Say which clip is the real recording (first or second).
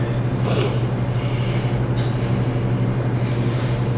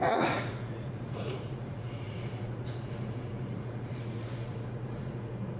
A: first